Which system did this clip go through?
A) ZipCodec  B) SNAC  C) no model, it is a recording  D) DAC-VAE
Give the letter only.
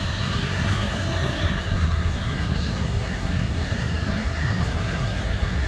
B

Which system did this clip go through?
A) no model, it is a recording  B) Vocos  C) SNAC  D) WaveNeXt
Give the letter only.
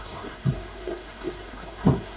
C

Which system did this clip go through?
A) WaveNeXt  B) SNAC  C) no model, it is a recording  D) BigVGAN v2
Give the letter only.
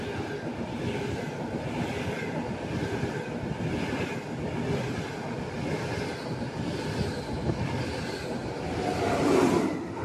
C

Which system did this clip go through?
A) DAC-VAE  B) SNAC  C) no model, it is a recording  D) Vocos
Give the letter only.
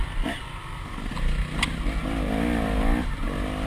C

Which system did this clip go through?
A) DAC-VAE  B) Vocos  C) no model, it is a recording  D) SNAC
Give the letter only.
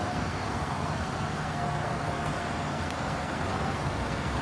D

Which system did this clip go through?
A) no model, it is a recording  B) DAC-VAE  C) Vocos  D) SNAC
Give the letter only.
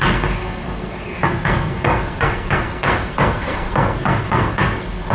D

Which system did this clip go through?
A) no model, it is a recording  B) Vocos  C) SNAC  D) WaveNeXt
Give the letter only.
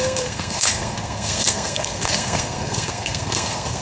C